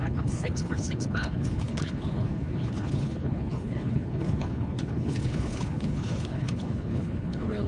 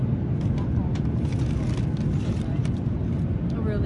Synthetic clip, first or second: first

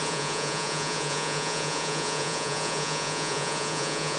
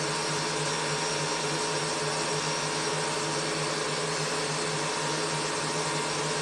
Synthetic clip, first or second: first